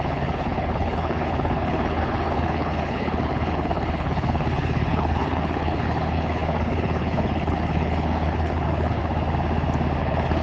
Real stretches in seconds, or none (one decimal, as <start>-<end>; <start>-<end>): 9.0-10.0

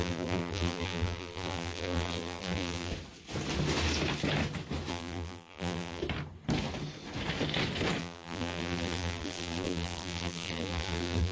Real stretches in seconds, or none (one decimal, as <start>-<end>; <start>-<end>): 2.9-4.9; 6.0-8.0